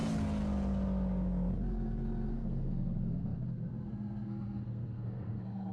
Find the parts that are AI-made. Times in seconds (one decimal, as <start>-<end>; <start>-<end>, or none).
2.3-5.7